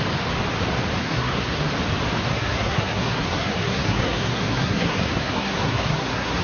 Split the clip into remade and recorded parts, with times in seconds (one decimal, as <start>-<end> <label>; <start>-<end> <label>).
0.0-1.0 recorded; 1.0-1.7 remade; 1.7-2.3 recorded; 2.3-6.4 remade

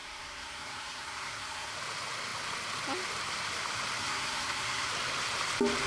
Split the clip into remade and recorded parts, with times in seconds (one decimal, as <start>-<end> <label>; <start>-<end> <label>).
0.0-1.7 remade; 1.7-4.0 recorded; 4.0-4.9 remade; 4.9-5.9 recorded

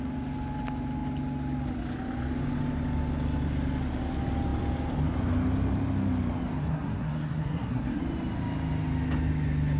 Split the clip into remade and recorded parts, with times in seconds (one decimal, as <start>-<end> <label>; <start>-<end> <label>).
0.0-6.6 recorded; 6.6-8.0 remade; 8.0-9.8 recorded

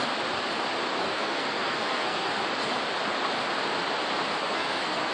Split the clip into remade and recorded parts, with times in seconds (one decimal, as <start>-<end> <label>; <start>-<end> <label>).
0.0-1.0 recorded; 1.0-2.4 remade; 2.4-4.4 recorded; 4.4-5.1 remade

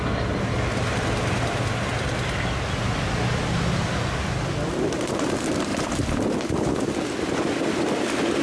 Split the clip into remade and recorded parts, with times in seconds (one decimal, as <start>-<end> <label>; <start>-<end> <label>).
0.0-8.4 recorded

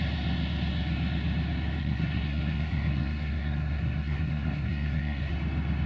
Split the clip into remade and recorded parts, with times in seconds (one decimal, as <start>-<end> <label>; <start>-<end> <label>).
0.0-1.8 recorded; 1.8-5.3 remade; 5.3-5.9 recorded